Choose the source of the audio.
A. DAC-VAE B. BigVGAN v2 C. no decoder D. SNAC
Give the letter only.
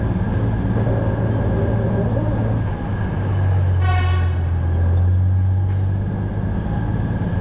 C